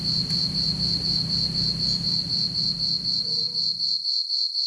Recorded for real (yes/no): yes